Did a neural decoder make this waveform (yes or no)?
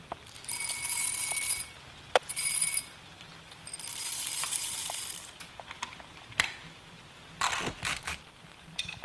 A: yes